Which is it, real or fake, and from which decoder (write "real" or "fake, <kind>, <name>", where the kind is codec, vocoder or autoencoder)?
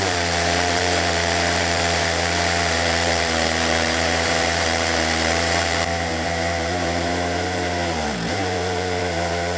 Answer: fake, vocoder, BigVGAN v2